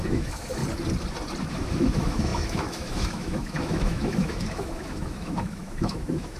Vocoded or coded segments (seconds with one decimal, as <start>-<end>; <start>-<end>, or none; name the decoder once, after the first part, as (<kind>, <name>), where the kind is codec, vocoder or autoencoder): 0.0-0.6 (autoencoder, DAC-VAE); 1.5-6.4